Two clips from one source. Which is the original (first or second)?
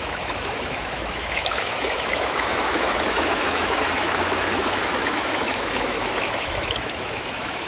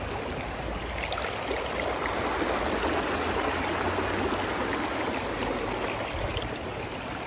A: second